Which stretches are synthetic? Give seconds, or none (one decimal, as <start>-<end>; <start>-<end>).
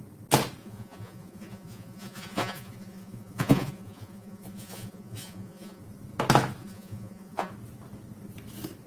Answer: 0.6-5.8; 6.6-7.5